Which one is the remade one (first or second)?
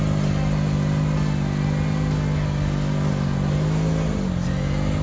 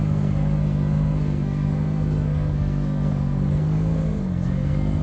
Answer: second